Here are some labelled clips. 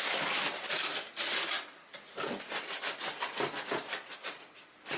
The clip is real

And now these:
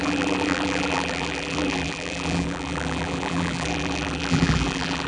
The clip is fake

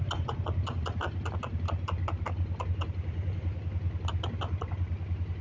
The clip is real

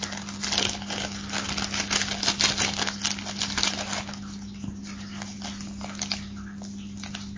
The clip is real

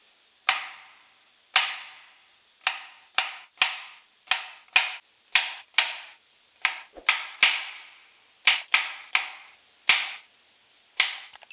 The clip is real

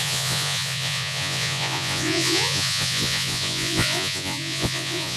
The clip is fake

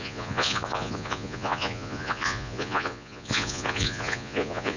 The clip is fake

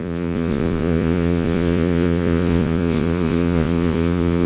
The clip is fake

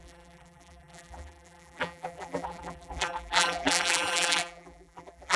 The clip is fake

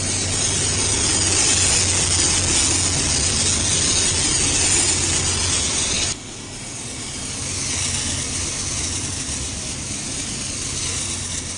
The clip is real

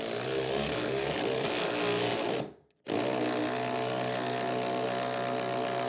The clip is real